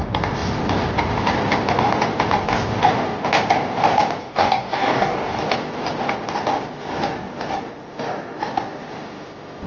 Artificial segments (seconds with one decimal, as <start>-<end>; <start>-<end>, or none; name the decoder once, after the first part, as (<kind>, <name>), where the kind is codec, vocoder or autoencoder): 4.2-5.4 (codec, DAC)